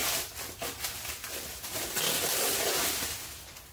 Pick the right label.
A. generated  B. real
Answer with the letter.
B